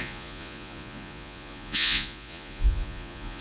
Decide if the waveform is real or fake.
fake